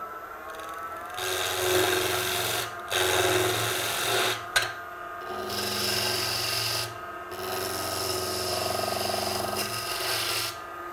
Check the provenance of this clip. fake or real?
real